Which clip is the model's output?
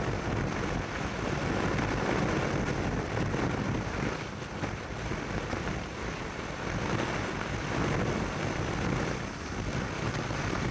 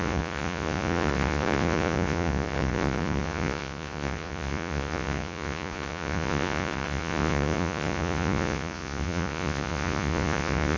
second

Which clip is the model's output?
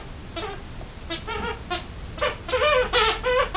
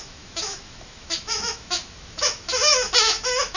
second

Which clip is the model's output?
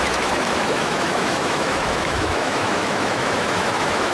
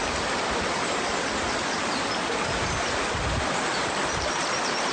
first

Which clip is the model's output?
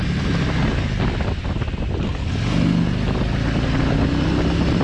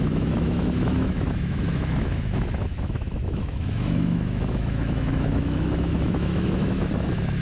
second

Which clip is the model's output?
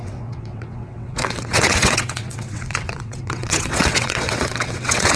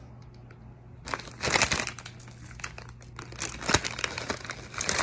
first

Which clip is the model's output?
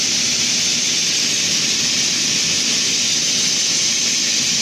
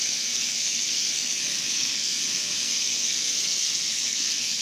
second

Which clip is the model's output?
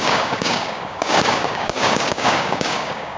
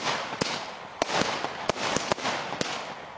first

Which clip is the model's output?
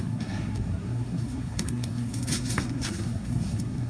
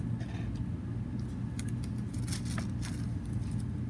first